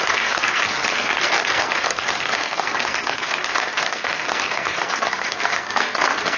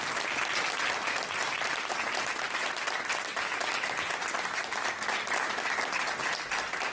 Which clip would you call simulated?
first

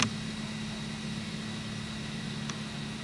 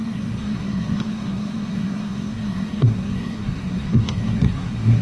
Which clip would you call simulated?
second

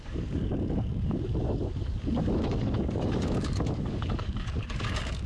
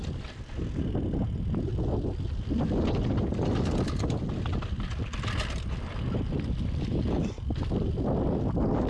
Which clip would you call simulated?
first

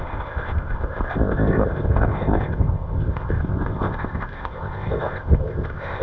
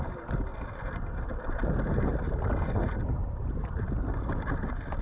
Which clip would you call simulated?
first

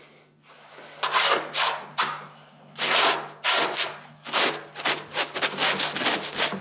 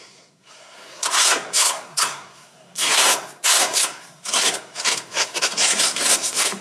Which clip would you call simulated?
second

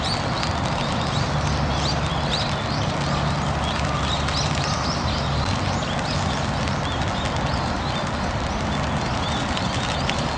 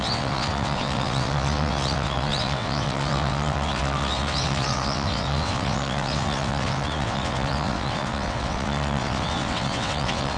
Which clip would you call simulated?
second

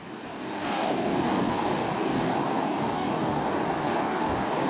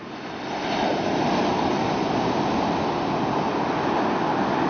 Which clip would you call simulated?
first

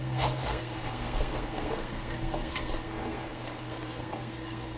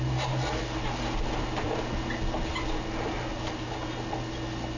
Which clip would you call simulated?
first